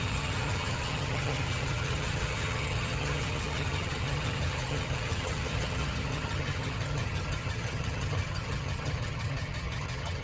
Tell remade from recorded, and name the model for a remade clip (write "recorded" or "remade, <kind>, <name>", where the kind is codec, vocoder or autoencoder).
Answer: remade, vocoder, HiFi-GAN